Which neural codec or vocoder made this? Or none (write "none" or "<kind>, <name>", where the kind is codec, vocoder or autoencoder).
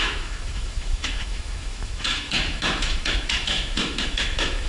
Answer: autoencoder, DAC-VAE